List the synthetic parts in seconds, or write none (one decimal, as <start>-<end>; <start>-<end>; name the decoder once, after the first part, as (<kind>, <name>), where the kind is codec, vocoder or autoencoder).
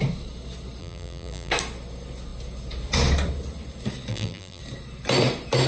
0.8-1.5 (vocoder, BigVGAN v2); 4.1-4.6